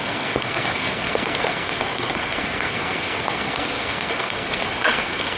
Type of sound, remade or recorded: remade